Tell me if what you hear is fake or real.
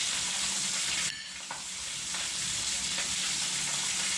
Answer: real